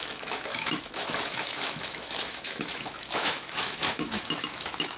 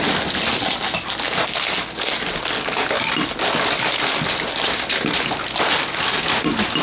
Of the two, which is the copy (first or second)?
first